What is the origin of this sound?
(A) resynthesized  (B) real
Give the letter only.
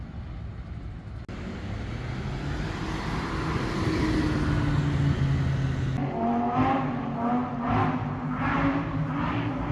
B